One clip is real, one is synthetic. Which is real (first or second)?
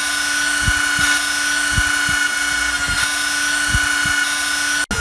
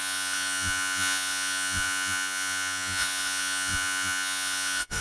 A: first